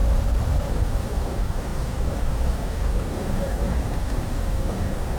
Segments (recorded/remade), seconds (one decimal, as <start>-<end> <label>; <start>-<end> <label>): 0.0-0.7 recorded; 0.7-5.2 remade